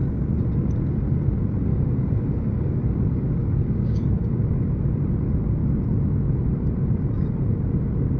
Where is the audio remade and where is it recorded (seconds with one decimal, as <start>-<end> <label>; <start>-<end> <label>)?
0.0-1.7 recorded; 1.7-2.8 remade; 2.8-3.4 recorded; 3.4-4.4 remade; 4.4-8.2 recorded